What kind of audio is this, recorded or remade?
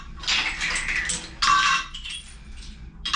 recorded